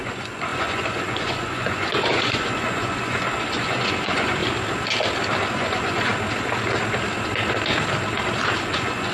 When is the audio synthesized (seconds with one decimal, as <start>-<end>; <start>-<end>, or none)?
0.0-4.4; 5.5-6.1; 8.6-9.1